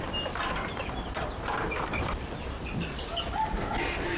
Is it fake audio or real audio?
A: real